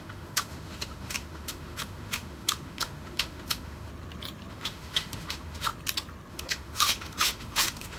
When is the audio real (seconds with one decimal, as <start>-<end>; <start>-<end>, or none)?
3.9-4.5; 5.7-6.3